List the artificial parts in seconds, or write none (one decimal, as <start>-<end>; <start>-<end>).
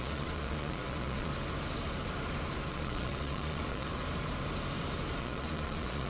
0.0-1.3; 2.7-3.9; 5.2-6.1